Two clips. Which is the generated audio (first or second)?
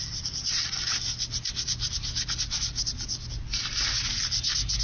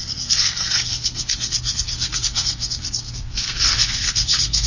second